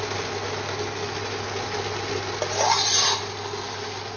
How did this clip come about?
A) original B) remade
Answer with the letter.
A